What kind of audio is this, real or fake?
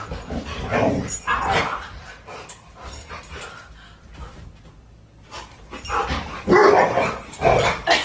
real